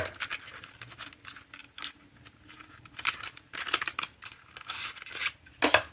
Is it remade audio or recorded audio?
recorded